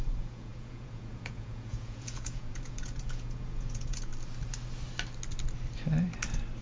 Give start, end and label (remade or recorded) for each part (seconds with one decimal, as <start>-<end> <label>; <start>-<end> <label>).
0.0-4.1 remade; 4.1-6.6 recorded